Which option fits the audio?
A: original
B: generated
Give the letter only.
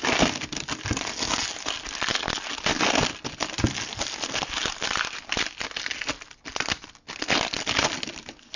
A